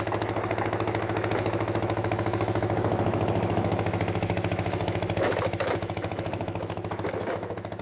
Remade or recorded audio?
remade